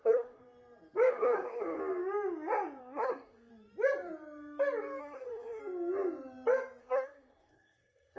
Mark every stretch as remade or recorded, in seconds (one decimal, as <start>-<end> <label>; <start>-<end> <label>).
0.0-0.4 remade; 0.4-1.1 recorded; 1.1-1.8 remade; 1.8-2.8 recorded; 2.8-3.5 remade; 3.5-5.0 recorded; 5.0-5.6 remade; 5.6-6.8 recorded; 6.8-8.2 remade